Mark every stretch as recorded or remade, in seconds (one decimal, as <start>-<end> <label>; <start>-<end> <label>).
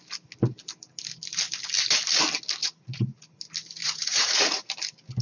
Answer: 0.0-2.6 recorded; 2.6-3.4 remade; 3.4-3.8 recorded; 3.8-4.7 remade; 4.7-5.2 recorded